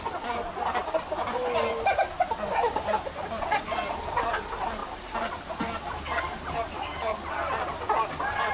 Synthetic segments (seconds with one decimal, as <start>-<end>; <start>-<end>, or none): none